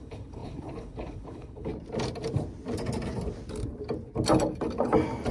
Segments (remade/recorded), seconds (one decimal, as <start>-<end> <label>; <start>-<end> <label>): 0.0-1.7 remade; 1.7-5.3 recorded

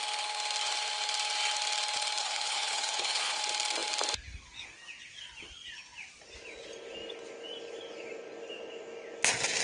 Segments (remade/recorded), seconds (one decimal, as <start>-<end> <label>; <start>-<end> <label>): 0.0-2.2 recorded; 2.2-3.4 remade; 3.4-9.6 recorded

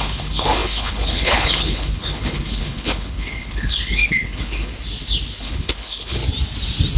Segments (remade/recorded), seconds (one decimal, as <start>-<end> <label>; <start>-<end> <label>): 0.0-4.7 remade; 4.7-5.4 recorded; 5.4-6.2 remade; 6.2-7.0 recorded